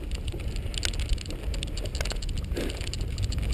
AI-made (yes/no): no